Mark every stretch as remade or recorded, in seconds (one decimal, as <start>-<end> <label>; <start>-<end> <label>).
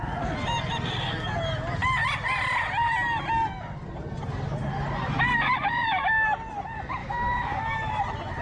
0.0-7.0 recorded; 7.0-8.0 remade; 8.0-8.4 recorded